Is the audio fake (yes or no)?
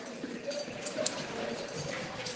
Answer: yes